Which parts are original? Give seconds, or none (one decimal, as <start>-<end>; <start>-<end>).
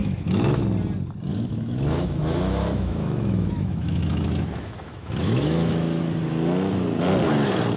0.6-1.3; 6.0-7.8